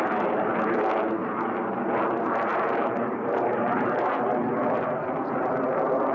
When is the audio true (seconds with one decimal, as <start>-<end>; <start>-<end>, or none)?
0.0-2.5; 4.4-6.1

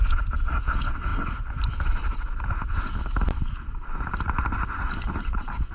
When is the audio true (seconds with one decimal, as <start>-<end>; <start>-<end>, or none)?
0.0-1.1; 3.5-5.7

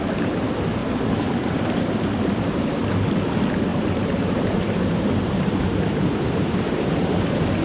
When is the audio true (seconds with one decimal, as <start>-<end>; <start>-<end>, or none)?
0.0-0.8; 1.6-3.7; 7.1-7.6

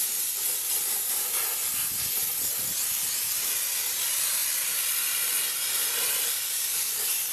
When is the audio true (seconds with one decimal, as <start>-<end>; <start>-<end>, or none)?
0.0-7.3

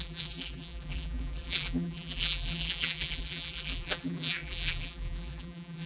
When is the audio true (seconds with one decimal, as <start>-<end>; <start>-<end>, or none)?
none

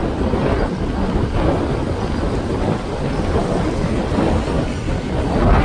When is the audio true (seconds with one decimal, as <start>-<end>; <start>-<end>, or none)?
0.0-5.6

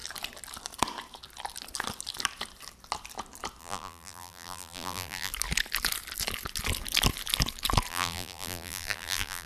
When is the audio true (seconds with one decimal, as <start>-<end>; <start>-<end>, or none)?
0.0-3.6; 5.3-7.9

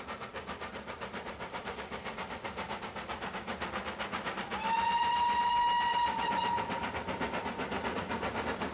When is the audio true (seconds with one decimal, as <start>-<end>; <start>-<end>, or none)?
0.0-0.7; 1.6-8.7